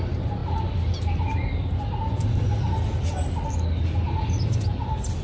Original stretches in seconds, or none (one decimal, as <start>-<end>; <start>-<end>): 0.0-5.2

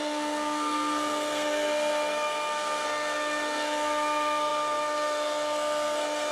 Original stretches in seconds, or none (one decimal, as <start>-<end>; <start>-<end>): none

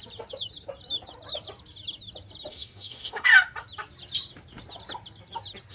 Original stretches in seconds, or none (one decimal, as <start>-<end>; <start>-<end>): 0.0-2.5; 3.3-5.7